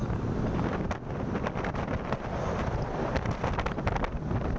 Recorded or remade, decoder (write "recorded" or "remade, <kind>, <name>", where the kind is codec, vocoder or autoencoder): recorded